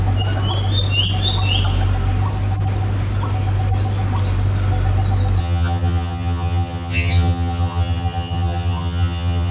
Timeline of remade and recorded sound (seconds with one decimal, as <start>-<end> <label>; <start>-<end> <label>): 0.0-5.4 recorded; 5.4-9.5 remade